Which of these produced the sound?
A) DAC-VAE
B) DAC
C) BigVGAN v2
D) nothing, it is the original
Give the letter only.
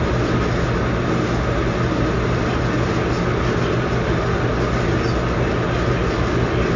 D